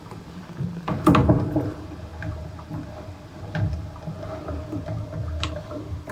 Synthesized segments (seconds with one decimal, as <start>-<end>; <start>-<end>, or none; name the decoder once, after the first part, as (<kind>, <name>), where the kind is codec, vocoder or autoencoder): none

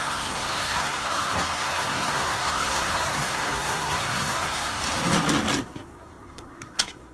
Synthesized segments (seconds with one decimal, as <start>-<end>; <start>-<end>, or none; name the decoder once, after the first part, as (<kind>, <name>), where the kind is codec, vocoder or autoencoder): 0.0-4.8 (codec, SNAC); 5.6-7.1

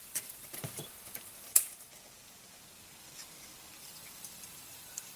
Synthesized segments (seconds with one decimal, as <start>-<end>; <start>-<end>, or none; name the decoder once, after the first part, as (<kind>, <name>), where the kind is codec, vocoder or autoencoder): 0.0-1.9 (vocoder, BigVGAN v2); 3.8-5.2

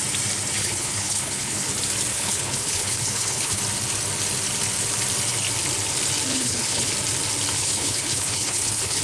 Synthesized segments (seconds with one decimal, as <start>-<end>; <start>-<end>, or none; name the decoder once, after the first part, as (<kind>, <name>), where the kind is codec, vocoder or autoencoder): 0.6-1.7 (codec, HILCodec); 2.1-3.6; 6.3-6.9; 7.6-9.0

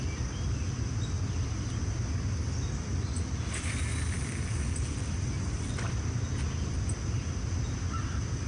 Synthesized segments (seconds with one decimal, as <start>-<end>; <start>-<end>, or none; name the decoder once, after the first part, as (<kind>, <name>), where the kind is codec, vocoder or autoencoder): none